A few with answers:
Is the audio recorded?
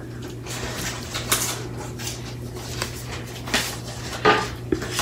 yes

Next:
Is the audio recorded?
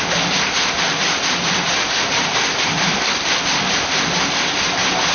yes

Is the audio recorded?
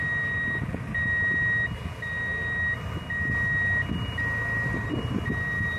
yes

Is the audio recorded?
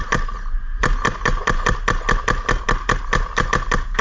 yes